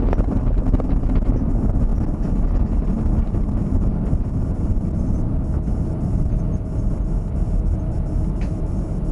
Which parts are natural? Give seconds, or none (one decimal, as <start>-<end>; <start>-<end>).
0.0-9.1